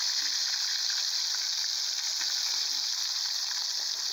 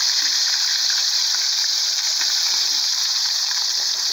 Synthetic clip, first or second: second